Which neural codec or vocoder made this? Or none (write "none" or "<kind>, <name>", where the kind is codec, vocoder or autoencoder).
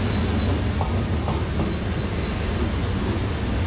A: none